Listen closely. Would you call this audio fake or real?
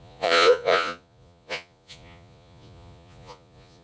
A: fake